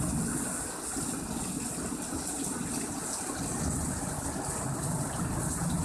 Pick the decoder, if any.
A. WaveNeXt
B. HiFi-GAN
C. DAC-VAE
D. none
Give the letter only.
D